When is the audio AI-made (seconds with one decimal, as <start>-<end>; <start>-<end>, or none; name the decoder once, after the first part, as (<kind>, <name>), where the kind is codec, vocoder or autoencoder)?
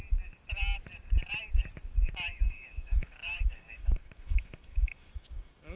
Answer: 2.3-5.8 (autoencoder, DAC-VAE)